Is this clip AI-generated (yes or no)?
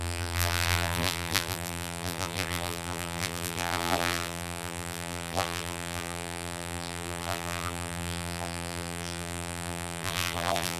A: yes